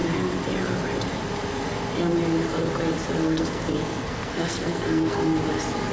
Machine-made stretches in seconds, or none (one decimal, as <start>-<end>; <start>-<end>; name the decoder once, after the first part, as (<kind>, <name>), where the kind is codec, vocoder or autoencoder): 3.2-5.2 (codec, SNAC)